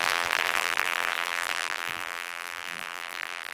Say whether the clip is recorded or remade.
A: remade